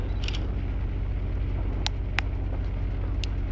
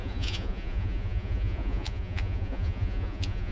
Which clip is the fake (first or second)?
second